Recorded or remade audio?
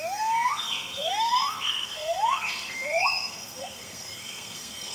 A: remade